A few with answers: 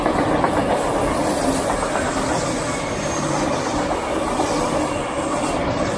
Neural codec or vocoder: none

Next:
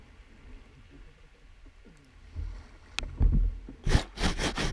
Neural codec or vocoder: none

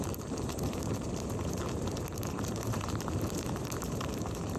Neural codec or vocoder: vocoder, BigVGAN v2